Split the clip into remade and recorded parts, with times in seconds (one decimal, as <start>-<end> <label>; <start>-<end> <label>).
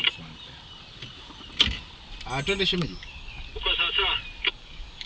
0.0-2.8 recorded; 2.8-3.5 remade; 3.5-4.5 recorded; 4.5-5.1 remade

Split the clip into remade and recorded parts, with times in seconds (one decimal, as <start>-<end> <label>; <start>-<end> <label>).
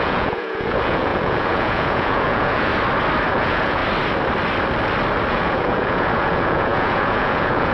0.0-2.7 remade; 2.7-3.3 recorded; 3.3-3.8 remade; 3.8-5.3 recorded; 5.3-7.7 remade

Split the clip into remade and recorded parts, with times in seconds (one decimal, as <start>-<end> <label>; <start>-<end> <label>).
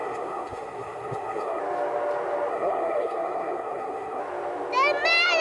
0.0-1.6 remade; 1.6-2.5 recorded; 2.5-4.2 remade; 4.2-5.4 recorded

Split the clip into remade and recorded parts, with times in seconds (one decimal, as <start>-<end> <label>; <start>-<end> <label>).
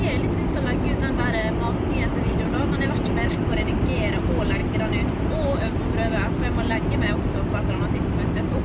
0.0-8.6 recorded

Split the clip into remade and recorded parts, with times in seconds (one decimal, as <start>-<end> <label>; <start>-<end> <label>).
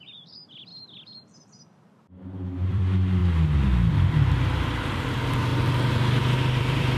0.0-0.7 remade; 0.7-2.7 recorded; 2.7-3.2 remade; 3.2-3.9 recorded; 3.9-5.5 remade; 5.5-6.2 recorded; 6.2-7.0 remade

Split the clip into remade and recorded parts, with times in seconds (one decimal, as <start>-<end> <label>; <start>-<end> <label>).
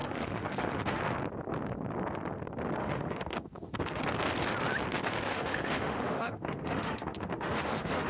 0.0-1.0 remade; 1.0-2.8 recorded; 2.8-4.0 remade; 4.0-5.3 recorded; 5.3-8.1 remade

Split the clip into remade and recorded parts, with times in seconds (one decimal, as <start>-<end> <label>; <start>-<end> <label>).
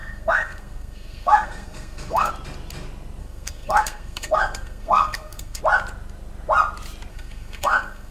0.0-2.3 remade; 2.3-3.2 recorded; 3.2-5.6 remade; 5.6-7.1 recorded; 7.1-8.1 remade